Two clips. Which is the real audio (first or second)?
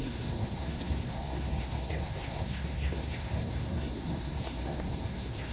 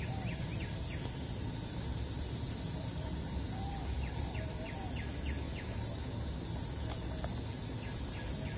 second